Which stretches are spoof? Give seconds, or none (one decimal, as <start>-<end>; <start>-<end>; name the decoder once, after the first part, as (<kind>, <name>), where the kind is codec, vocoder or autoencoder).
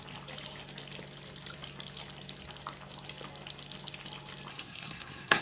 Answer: 4.5-5.4 (codec, SNAC)